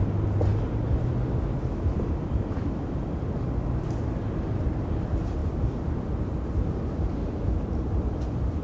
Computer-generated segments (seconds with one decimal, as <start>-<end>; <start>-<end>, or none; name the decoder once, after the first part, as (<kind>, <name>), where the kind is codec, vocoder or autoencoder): 1.7-2.7 (vocoder, BigVGAN v2)